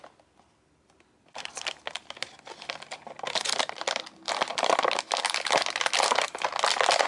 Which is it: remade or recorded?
recorded